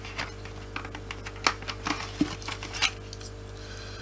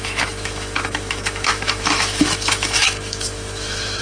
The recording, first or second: first